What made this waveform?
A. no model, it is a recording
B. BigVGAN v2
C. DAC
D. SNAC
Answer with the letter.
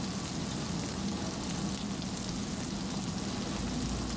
A